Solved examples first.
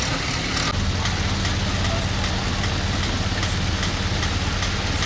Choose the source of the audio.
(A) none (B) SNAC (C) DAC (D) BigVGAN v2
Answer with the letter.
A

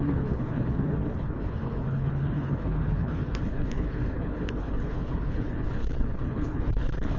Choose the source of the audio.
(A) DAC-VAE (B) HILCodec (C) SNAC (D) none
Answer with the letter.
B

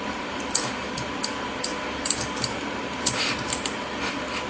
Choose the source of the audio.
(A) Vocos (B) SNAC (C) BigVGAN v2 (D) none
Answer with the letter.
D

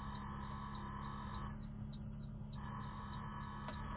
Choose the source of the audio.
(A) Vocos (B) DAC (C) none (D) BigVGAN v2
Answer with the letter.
C